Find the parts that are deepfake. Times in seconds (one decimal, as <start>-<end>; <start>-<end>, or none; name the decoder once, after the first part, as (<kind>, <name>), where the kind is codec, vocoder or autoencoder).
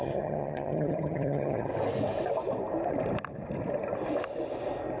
0.0-1.7 (vocoder, HiFi-GAN)